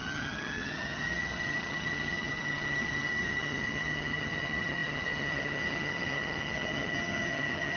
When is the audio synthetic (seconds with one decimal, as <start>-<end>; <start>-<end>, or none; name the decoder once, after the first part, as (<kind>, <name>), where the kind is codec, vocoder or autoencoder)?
0.0-7.8 (vocoder, HiFi-GAN)